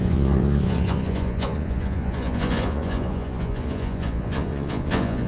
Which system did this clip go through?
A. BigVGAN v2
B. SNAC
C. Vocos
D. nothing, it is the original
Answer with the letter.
C